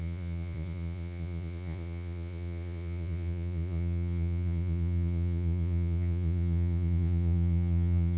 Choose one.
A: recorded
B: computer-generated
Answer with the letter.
B